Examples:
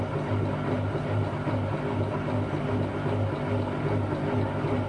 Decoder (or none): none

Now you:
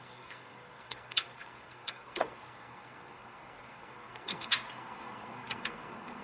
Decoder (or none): codec, SNAC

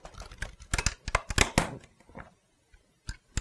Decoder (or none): none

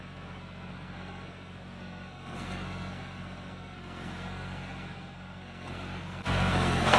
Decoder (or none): codec, SNAC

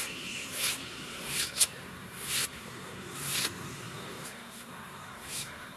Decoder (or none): codec, SNAC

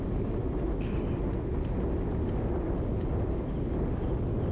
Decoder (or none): none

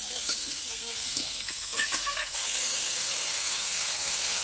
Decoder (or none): codec, SNAC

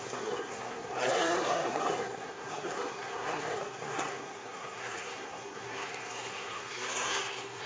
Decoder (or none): codec, SNAC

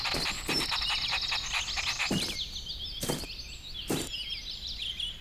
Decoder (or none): none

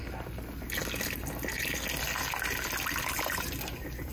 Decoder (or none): none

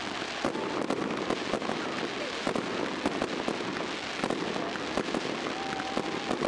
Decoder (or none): none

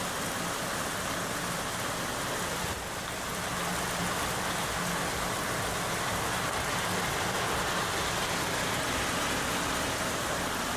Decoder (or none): none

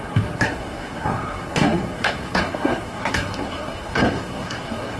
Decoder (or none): codec, SNAC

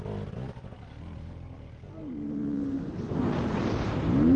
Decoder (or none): none